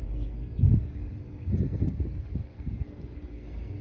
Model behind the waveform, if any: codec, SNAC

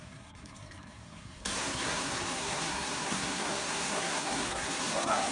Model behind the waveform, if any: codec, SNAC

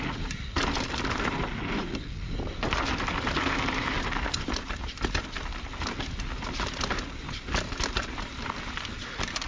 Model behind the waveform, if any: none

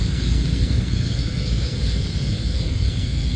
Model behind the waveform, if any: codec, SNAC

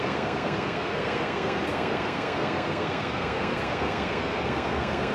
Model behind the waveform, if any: codec, SNAC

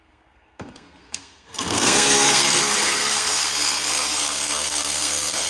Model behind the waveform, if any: codec, SNAC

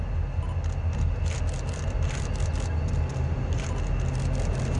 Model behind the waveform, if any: none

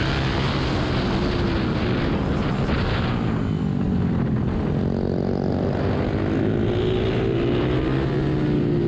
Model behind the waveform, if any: none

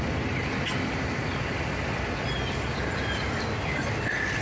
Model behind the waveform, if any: none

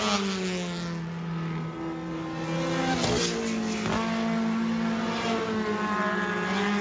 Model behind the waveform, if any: none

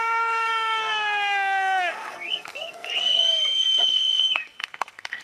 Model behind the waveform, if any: codec, SNAC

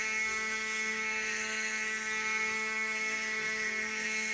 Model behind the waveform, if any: codec, SNAC